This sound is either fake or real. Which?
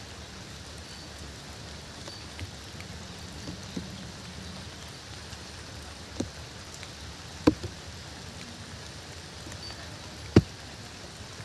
real